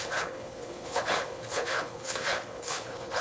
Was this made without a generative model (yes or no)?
no